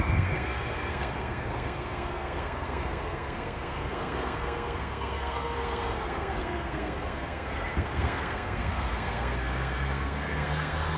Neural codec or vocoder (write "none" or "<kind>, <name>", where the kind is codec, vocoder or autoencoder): codec, SNAC